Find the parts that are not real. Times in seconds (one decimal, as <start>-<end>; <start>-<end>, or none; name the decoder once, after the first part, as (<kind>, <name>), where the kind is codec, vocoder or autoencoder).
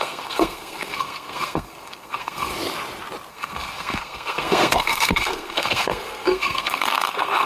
0.0-2.5 (codec, SNAC); 3.3-7.5